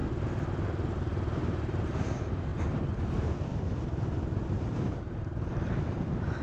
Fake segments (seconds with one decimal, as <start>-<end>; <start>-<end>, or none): 0.9-3.5; 4.5-6.4